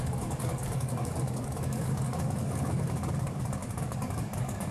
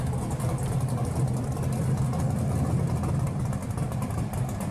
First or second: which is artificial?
first